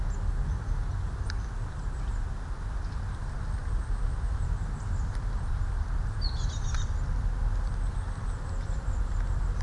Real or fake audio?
real